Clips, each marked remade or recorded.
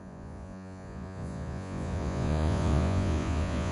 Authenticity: remade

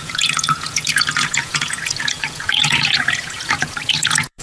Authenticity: remade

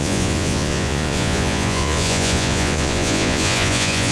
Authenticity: remade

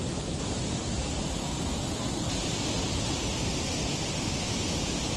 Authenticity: recorded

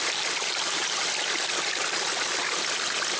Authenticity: recorded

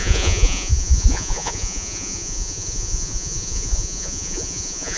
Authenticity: remade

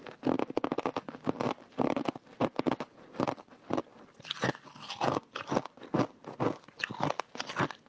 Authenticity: recorded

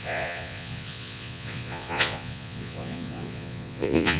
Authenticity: remade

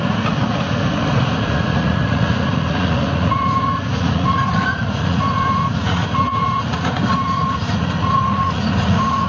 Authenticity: remade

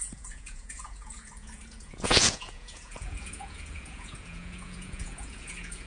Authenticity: remade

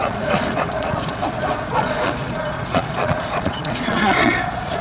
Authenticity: remade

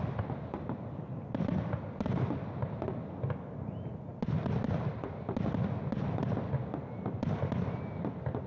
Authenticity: recorded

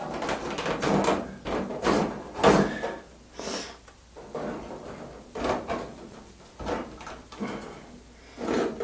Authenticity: recorded